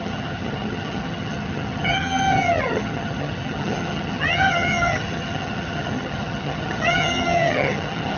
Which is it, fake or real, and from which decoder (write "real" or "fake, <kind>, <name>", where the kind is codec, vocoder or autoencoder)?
fake, vocoder, HiFi-GAN